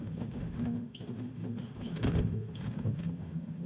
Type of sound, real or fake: fake